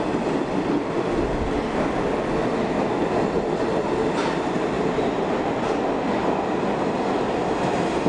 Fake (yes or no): no